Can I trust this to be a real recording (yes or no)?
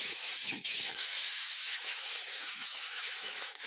no